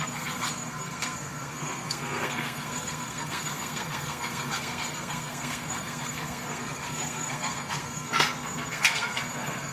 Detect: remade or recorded remade